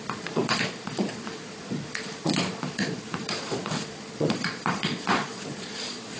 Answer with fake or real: fake